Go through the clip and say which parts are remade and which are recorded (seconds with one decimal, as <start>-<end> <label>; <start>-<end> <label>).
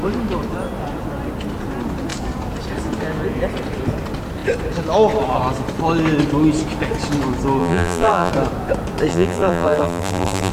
0.0-7.6 recorded; 7.6-8.3 remade; 8.3-9.1 recorded; 9.1-10.5 remade